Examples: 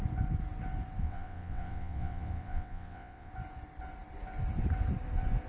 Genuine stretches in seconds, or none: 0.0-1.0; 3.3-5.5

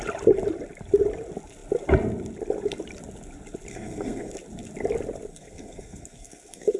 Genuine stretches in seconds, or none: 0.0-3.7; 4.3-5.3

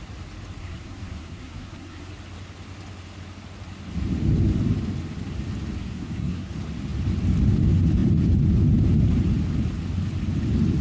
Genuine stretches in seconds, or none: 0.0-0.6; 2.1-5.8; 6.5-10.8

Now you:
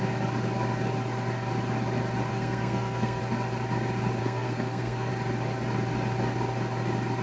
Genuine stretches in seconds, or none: 0.0-2.3; 3.2-4.2; 5.1-7.2

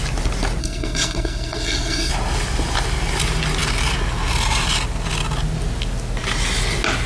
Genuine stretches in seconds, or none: 0.0-0.6; 2.1-7.1